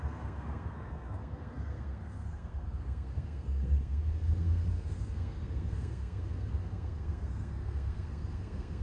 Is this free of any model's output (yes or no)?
no